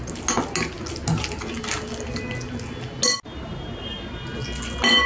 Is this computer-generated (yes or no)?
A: no